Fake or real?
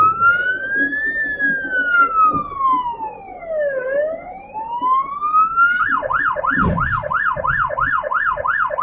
real